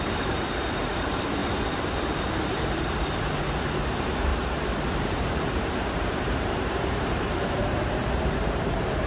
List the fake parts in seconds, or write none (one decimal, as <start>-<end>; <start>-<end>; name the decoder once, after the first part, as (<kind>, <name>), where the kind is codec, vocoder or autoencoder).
0.0-1.4 (vocoder, BigVGAN v2); 3.6-4.3; 4.9-9.1